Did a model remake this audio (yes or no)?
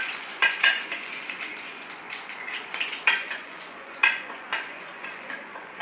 yes